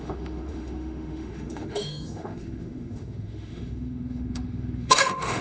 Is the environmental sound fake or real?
fake